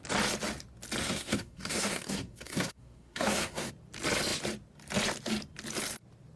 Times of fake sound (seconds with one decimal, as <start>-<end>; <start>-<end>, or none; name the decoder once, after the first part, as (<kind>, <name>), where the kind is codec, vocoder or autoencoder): 1.0-3.7 (codec, SNAC)